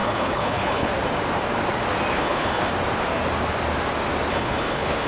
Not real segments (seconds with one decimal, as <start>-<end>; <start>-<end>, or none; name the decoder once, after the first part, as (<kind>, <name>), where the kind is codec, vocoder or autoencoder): 0.0-0.9 (codec, HILCodec); 2.1-2.7; 4.3-5.1